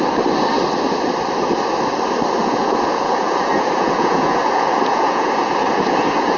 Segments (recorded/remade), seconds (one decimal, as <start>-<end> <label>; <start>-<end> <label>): 0.0-2.4 recorded; 2.4-6.4 remade